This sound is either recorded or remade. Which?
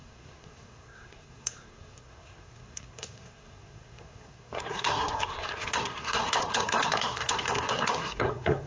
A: remade